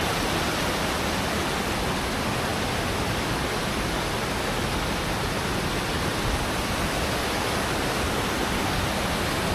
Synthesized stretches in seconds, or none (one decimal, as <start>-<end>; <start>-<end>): none